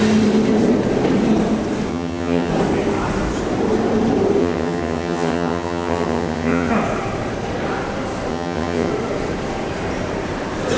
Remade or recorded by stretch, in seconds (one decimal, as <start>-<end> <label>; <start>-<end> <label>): 0.0-1.9 recorded; 1.9-2.5 remade; 2.5-4.4 recorded; 4.4-6.7 remade; 6.7-8.3 recorded; 8.3-8.9 remade; 8.9-10.8 recorded